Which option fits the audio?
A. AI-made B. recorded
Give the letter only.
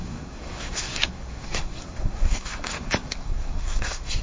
A